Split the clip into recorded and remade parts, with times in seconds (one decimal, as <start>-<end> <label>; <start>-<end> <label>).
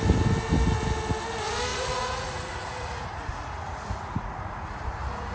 0.0-1.7 recorded; 1.7-5.3 remade